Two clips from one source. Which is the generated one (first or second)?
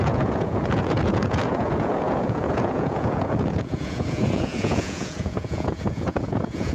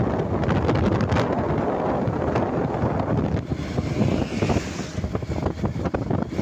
first